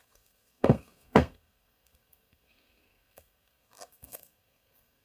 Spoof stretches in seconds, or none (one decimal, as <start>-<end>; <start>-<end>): 0.0-5.0